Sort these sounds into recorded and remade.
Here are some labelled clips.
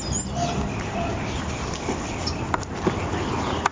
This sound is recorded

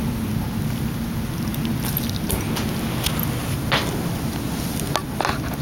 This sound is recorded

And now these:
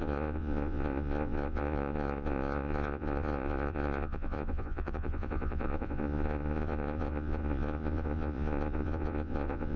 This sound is remade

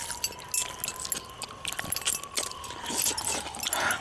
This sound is recorded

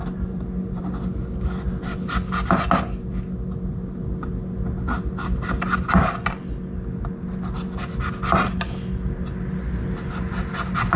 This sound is recorded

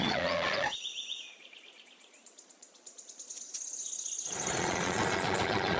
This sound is remade